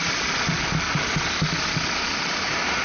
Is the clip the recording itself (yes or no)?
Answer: yes